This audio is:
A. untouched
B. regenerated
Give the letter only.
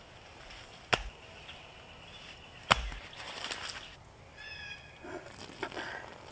A